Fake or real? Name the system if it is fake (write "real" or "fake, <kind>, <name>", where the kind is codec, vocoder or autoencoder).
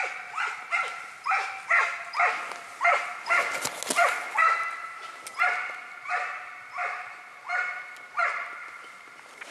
real